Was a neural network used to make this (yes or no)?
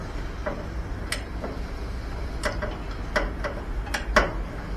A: no